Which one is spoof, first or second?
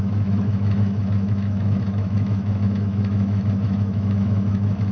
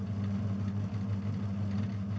first